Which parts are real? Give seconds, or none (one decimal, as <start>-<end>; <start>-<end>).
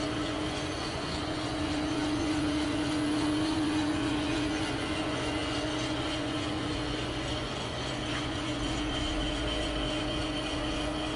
none